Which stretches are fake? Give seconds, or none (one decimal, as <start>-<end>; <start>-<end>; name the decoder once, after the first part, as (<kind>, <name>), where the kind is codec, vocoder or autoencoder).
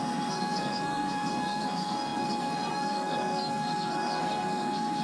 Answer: 0.0-5.0 (codec, SNAC)